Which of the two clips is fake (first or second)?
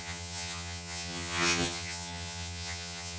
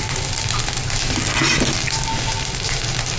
first